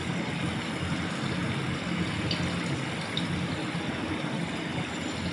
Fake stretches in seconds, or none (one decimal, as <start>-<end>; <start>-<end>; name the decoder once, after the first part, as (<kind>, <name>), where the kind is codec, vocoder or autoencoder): none